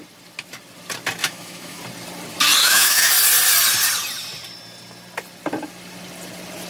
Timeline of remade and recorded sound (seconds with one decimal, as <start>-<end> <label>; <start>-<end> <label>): 0.0-1.2 recorded; 1.2-1.8 remade; 1.8-2.6 recorded; 2.6-3.1 remade; 3.1-6.7 recorded